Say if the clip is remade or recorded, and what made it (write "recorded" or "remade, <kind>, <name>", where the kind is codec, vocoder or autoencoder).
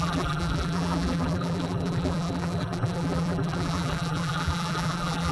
remade, vocoder, BigVGAN v2